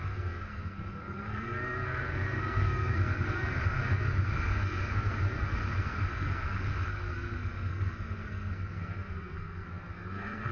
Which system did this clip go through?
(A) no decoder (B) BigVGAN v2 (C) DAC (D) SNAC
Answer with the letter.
D